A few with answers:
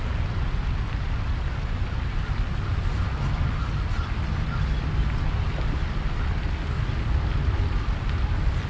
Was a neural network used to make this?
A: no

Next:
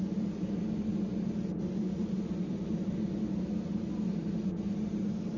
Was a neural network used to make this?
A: no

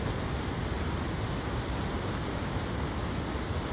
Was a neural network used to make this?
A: no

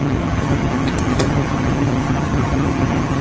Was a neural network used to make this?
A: yes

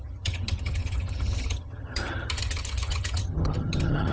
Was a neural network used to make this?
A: yes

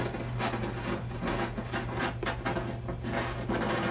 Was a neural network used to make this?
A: no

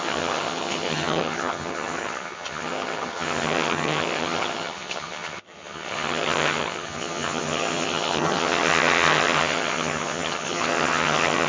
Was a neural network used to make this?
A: yes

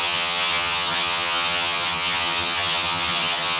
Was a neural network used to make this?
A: yes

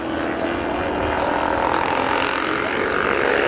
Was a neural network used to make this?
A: no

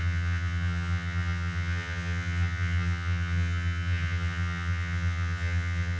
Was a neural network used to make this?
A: yes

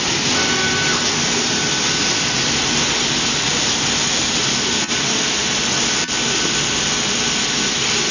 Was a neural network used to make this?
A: no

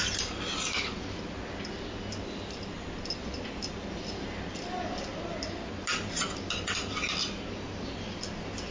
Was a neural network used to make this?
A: no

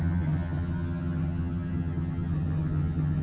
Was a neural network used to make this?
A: yes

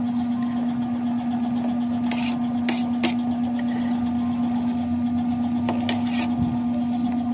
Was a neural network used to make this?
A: no